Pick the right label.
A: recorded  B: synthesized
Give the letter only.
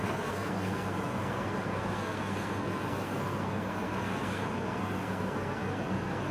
B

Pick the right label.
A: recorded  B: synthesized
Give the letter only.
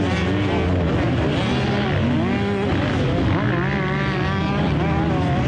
A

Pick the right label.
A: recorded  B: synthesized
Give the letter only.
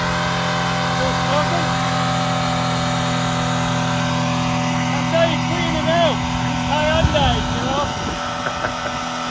A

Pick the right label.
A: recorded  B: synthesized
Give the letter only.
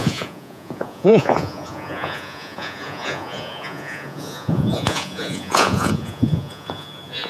B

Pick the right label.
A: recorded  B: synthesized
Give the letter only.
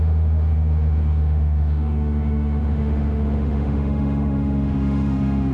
B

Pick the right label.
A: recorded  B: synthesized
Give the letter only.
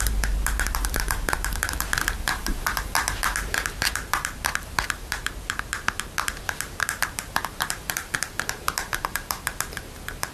B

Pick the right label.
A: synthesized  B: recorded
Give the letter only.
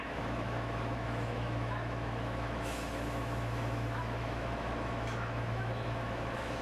A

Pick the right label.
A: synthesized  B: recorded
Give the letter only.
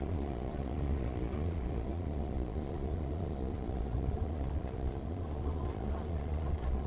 A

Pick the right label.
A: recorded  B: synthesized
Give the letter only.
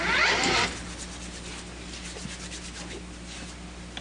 A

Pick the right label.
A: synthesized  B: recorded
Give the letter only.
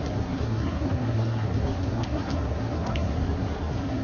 A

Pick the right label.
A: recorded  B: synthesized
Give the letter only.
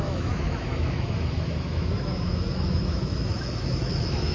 B